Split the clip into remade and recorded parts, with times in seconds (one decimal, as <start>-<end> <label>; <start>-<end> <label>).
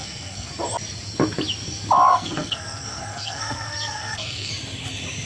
0.0-0.5 remade; 0.5-2.1 recorded; 2.1-4.5 remade; 4.5-5.3 recorded